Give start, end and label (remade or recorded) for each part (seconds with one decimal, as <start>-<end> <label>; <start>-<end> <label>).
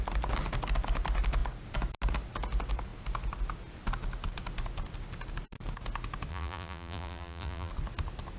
0.0-6.3 recorded; 6.3-7.7 remade; 7.7-8.4 recorded